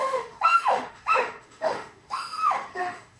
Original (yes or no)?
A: no